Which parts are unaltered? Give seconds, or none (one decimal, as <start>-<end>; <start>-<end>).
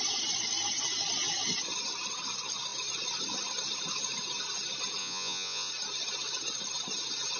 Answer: 0.0-5.0; 5.7-7.4